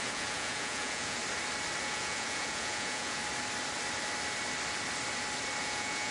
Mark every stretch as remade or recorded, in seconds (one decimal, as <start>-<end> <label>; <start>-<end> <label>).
0.0-1.2 remade; 1.2-1.8 recorded; 1.8-3.2 remade; 3.2-5.6 recorded; 5.6-6.1 remade